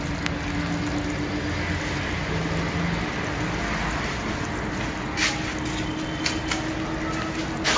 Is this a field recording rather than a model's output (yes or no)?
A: yes